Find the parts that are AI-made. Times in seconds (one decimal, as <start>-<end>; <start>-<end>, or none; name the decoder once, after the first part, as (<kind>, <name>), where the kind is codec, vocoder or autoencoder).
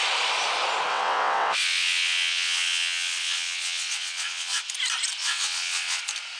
0.9-4.6 (vocoder, WaveNeXt); 5.2-6.0